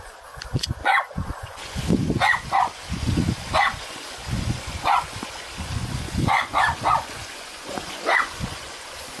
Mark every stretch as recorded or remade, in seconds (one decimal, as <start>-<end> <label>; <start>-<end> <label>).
0.0-9.2 remade